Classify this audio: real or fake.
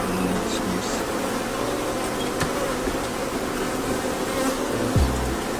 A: real